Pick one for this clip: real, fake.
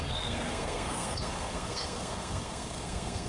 fake